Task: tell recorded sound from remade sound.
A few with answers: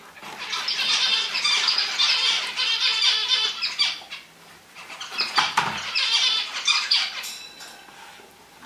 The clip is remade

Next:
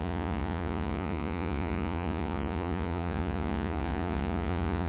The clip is remade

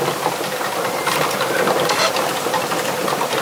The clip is remade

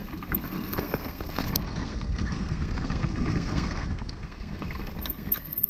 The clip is remade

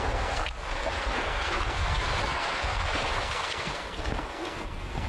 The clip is remade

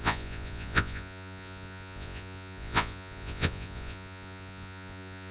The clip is remade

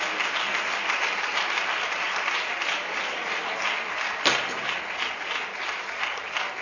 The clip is recorded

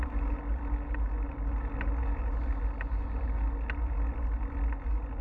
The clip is recorded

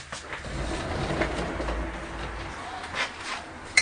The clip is recorded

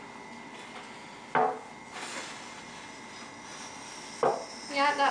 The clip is recorded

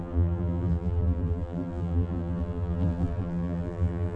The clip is remade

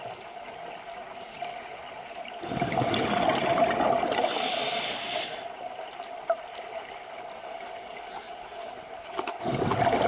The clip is recorded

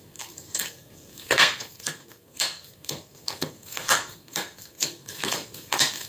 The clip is remade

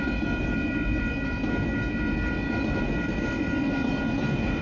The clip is recorded